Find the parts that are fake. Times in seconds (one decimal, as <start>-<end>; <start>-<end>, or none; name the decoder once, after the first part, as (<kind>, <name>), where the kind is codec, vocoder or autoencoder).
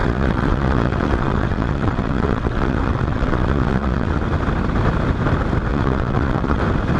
0.0-4.2 (vocoder, WaveNeXt); 5.7-6.6